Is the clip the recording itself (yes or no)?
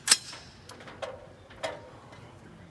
yes